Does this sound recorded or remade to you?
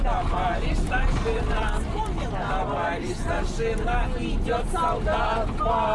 recorded